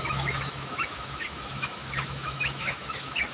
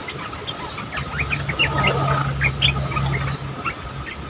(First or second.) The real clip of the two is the second